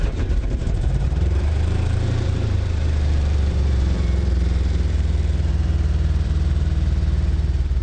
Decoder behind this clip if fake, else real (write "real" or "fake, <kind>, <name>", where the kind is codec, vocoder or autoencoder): fake, vocoder, BigVGAN v2